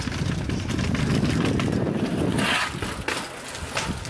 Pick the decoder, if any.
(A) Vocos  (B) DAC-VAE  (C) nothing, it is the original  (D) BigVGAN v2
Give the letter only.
C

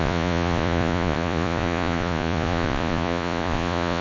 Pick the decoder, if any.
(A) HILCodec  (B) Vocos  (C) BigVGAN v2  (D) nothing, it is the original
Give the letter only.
B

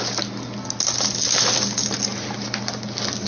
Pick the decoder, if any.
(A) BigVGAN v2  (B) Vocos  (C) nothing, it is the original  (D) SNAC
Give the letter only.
C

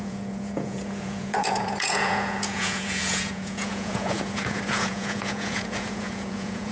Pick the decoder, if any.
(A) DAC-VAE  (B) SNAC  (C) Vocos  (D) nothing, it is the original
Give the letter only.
C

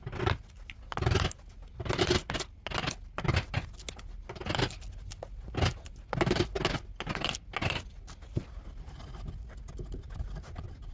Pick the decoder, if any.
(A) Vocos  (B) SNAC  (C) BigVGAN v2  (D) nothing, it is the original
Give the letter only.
D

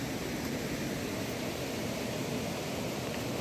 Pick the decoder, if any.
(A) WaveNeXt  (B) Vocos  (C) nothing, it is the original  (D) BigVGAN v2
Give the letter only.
C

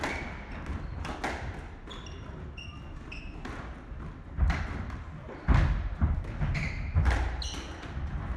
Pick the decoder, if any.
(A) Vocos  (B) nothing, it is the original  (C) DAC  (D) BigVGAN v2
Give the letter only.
B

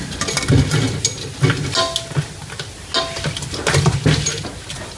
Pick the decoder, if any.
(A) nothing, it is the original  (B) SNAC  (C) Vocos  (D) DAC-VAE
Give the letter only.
A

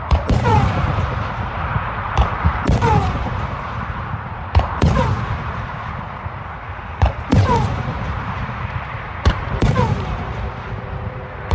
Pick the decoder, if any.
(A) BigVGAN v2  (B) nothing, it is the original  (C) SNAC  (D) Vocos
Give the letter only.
D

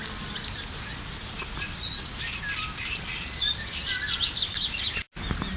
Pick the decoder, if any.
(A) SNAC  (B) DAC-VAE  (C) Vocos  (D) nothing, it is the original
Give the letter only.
D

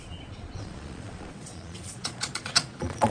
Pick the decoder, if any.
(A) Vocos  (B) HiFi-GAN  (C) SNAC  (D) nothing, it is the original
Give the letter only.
A